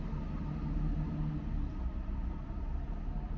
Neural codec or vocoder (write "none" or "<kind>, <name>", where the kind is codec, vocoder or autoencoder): none